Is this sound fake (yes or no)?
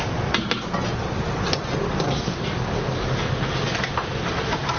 no